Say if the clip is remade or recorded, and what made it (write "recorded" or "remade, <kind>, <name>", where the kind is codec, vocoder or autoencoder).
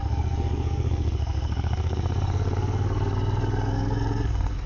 remade, codec, SNAC